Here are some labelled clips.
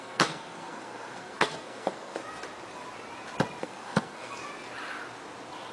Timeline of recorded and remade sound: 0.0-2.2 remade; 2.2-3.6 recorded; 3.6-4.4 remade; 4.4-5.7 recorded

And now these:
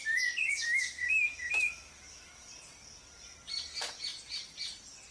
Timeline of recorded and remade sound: 0.0-0.4 recorded; 0.4-2.5 remade; 2.5-5.1 recorded

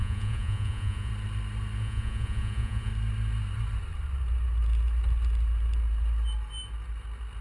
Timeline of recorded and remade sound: 0.0-1.1 remade; 1.1-1.8 recorded; 1.8-2.9 remade; 2.9-7.4 recorded

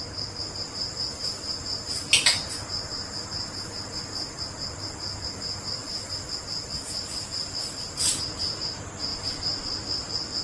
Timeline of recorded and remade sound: 0.0-9.1 recorded; 9.1-10.4 remade

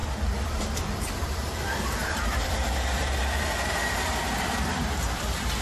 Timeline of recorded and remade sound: 0.0-5.6 remade

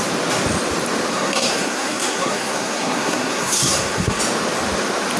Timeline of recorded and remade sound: 0.0-1.1 recorded; 1.1-4.2 remade; 4.2-5.2 recorded